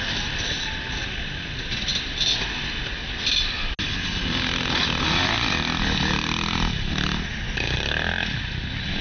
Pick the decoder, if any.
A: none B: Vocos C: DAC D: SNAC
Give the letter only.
A